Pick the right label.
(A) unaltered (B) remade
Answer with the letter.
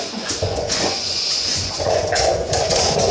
B